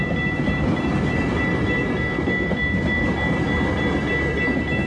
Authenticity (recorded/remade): recorded